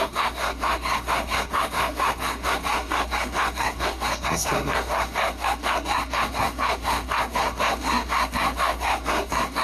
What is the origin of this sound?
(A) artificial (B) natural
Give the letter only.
A